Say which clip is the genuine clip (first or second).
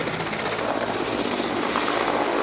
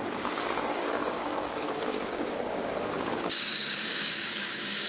first